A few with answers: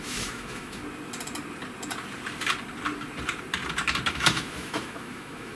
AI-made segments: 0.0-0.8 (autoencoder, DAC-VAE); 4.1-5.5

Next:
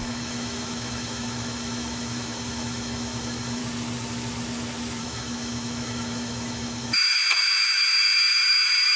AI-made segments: 0.0-3.6 (autoencoder, DAC-VAE); 5.0-9.0